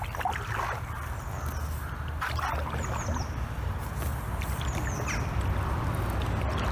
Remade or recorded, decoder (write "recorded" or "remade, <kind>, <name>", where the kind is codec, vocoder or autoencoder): recorded